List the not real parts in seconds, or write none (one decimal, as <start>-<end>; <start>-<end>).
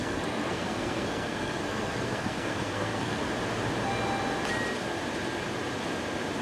0.0-3.3